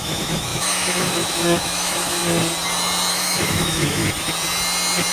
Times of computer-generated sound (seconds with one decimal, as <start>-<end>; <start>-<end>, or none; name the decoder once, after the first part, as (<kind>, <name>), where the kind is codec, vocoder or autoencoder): 0.0-2.2 (autoencoder, DAC-VAE); 3.1-4.0

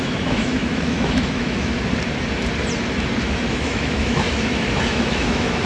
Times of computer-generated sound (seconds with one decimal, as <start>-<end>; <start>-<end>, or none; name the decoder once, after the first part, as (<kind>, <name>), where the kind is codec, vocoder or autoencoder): 0.0-1.7 (autoencoder, DAC-VAE); 3.2-5.7

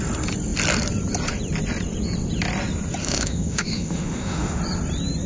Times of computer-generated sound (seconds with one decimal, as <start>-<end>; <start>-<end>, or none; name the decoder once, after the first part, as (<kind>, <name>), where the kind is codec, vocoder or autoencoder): 3.0-4.6 (autoencoder, DAC-VAE)

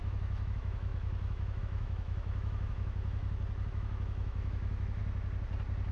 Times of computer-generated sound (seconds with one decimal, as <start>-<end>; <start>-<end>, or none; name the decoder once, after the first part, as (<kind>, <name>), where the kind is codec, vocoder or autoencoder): 0.0-3.2 (autoencoder, DAC-VAE); 3.7-5.0

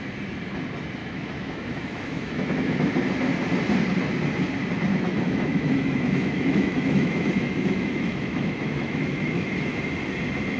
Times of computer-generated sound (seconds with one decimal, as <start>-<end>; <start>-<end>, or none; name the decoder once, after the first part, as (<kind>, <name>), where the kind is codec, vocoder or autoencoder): 1.0-2.9 (autoencoder, DAC-VAE); 4.9-9.8

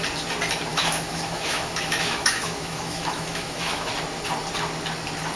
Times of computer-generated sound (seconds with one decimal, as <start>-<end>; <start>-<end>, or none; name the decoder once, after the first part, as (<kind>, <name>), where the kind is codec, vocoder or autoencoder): 0.7-3.9 (autoencoder, DAC-VAE)